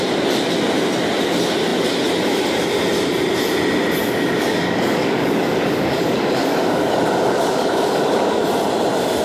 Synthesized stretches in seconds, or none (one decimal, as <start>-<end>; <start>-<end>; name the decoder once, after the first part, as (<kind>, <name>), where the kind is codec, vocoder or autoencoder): 4.0-8.4 (codec, DAC)